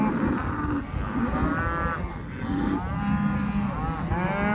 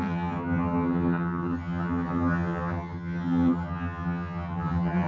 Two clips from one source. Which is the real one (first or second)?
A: first